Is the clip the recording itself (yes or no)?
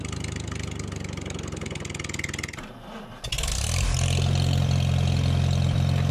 yes